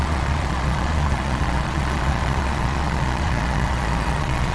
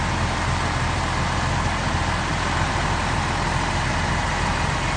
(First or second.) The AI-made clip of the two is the first